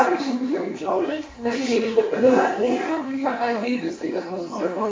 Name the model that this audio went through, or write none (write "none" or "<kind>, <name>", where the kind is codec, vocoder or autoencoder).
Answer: codec, SNAC